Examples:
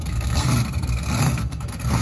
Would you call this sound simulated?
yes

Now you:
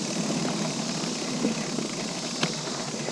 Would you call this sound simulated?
no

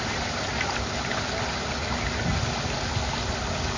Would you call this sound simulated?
no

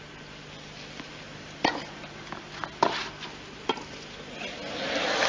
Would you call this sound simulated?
no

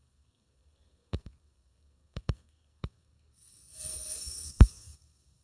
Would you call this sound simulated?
yes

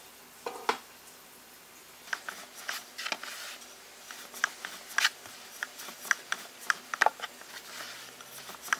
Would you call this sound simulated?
no